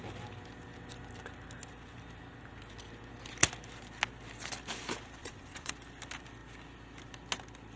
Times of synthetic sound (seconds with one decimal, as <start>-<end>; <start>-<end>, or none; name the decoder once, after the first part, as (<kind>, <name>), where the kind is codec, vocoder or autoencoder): 5.2-5.7 (vocoder, WaveNeXt)